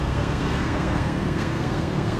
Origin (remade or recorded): remade